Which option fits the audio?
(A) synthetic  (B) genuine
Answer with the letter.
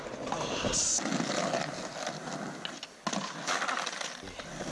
B